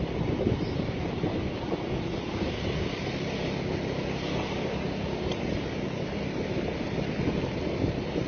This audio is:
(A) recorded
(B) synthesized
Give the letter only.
A